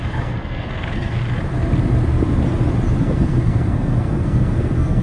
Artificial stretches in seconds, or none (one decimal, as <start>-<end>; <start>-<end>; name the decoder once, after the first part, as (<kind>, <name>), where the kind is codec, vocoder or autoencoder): 0.0-1.2 (codec, SNAC); 3.0-5.0

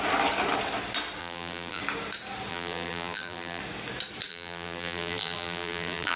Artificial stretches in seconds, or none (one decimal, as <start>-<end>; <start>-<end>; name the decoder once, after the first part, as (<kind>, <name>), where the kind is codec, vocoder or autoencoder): 1.2-1.8 (vocoder, BigVGAN v2); 2.5-3.6; 4.3-6.2

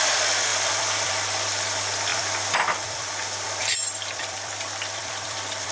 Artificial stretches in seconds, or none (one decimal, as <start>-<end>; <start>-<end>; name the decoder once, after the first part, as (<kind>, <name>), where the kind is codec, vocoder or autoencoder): 0.0-5.7 (vocoder, BigVGAN v2)

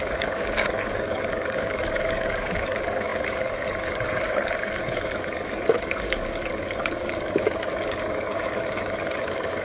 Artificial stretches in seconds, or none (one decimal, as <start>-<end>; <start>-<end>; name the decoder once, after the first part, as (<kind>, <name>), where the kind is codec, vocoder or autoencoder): 0.0-9.6 (codec, DAC)

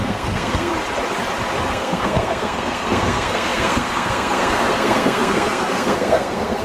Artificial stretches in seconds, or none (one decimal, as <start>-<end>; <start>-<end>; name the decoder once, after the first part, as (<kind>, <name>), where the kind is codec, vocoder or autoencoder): 0.0-0.7 (codec, SNAC); 1.7-6.6

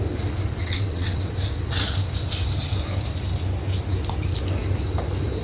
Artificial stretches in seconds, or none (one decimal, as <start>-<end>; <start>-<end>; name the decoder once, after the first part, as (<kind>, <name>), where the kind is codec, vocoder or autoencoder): 0.6-1.2 (vocoder, WaveNeXt)

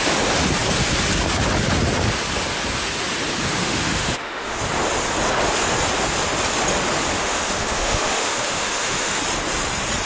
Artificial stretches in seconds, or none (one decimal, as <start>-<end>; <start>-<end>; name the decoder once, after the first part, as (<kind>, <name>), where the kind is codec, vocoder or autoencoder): 3.6-4.6 (autoencoder, DAC-VAE); 7.1-9.2